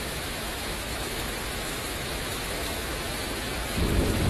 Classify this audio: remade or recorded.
remade